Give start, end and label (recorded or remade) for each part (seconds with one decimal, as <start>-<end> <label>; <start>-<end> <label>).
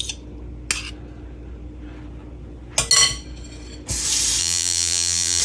0.0-4.4 recorded; 4.4-5.4 remade